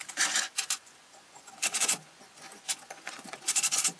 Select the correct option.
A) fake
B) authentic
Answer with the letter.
A